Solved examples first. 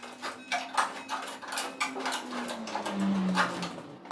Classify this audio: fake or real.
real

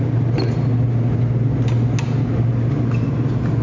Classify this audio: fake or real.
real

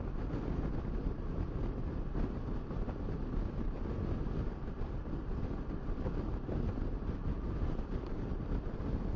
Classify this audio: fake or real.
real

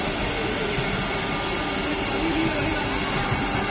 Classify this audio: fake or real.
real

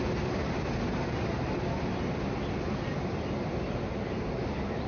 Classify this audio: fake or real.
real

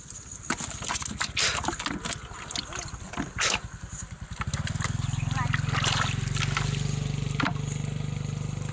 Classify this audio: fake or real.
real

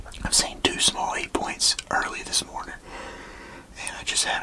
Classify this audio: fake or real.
fake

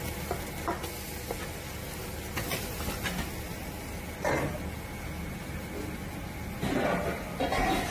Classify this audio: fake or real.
real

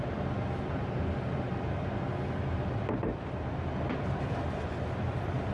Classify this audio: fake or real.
real